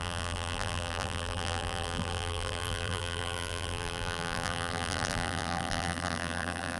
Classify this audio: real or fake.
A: fake